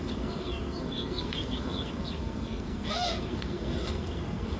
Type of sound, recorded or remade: remade